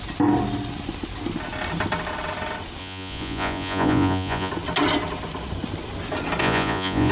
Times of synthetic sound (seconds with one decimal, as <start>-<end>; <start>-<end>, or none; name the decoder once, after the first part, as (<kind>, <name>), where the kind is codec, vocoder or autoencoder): 2.8-4.5 (vocoder, Vocos); 6.4-7.1